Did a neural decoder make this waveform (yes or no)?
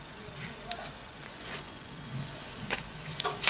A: yes